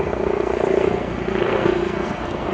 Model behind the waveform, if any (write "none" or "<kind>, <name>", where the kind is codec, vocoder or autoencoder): codec, SNAC